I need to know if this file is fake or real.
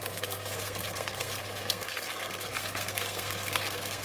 fake